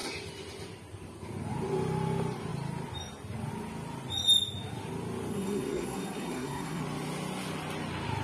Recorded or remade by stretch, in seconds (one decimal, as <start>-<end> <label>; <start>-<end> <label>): 0.0-5.3 recorded; 5.3-6.8 remade; 6.8-8.2 recorded